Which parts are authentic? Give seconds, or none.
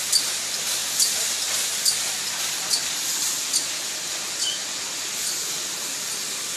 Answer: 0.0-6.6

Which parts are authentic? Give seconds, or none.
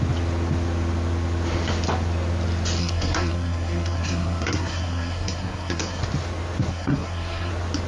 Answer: 0.0-2.8; 6.0-6.7; 7.5-7.9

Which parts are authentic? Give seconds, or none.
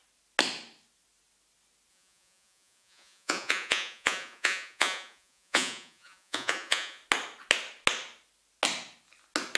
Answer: 0.0-1.9; 7.0-9.6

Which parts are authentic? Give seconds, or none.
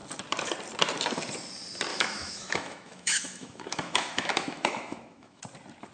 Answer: 0.0-1.9; 5.4-5.9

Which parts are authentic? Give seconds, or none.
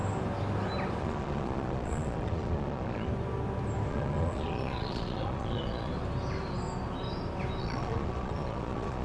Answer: 0.0-1.0; 3.1-3.9; 5.9-7.6